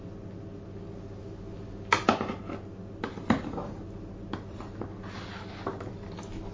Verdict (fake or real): real